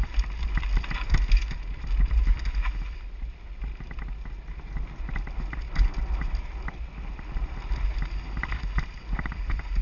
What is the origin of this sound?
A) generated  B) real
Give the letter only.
B